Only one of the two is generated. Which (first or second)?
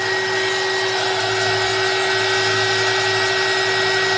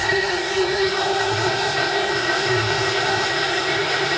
second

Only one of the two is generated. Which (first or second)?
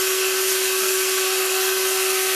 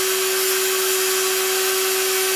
first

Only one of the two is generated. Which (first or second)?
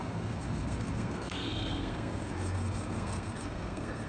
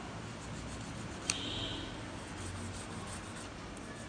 first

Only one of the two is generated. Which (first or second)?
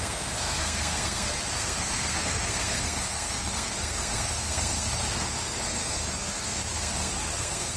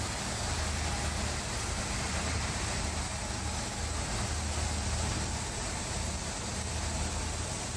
first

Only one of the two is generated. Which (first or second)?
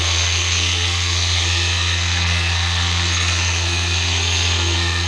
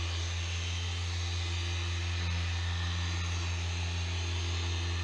first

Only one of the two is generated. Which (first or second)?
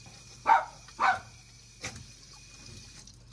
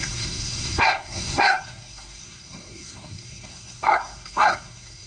second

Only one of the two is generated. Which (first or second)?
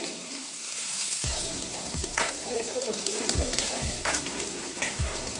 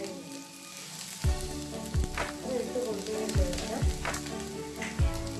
first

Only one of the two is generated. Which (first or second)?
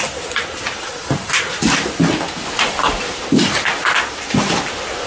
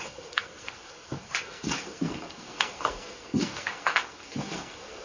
second